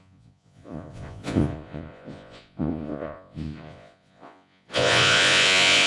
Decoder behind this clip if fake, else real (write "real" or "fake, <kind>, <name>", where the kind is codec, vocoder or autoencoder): fake, vocoder, Vocos